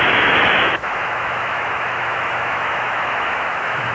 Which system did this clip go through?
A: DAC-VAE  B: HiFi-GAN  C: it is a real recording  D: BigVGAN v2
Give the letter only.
A